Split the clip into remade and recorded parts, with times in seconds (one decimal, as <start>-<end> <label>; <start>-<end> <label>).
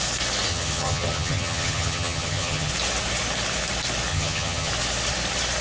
0.0-0.5 recorded; 0.5-2.7 remade; 2.7-4.1 recorded; 4.1-4.7 remade; 4.7-5.6 recorded